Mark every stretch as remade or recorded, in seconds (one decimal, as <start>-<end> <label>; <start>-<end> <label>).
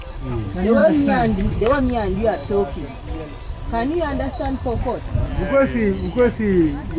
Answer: 0.0-0.8 recorded; 0.8-1.8 remade; 1.8-7.0 recorded